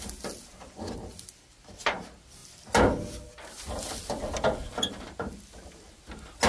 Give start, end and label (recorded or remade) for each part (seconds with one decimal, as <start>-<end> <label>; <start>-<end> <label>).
0.0-6.5 recorded